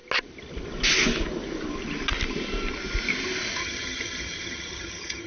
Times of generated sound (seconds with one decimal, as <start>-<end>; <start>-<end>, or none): 3.6-5.3